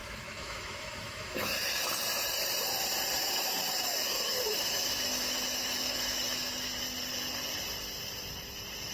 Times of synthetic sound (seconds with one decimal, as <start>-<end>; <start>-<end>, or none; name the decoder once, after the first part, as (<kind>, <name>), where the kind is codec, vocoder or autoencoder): 0.0-1.5 (autoencoder, DAC-VAE); 3.2-6.8